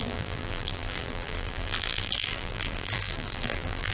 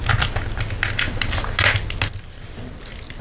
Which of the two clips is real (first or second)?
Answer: second